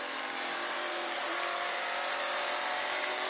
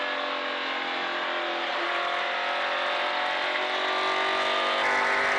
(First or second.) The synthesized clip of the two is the first